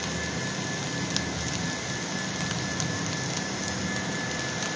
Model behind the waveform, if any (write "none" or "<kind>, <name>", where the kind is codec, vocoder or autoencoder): none